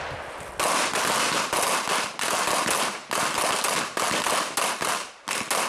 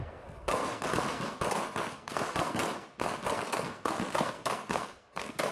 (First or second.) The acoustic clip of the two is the first